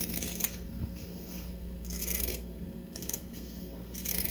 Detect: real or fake fake